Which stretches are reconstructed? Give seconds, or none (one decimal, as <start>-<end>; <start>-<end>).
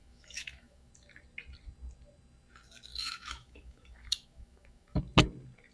0.0-0.9; 2.9-5.0